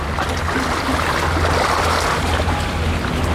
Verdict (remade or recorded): recorded